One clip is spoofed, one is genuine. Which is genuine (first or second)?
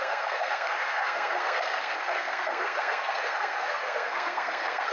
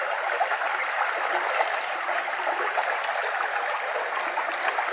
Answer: second